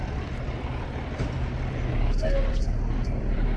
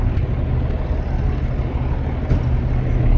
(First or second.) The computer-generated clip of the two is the first